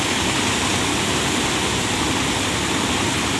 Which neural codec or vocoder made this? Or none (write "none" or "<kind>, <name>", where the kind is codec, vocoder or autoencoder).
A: vocoder, BigVGAN v2